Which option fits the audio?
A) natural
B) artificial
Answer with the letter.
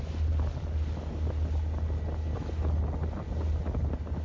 A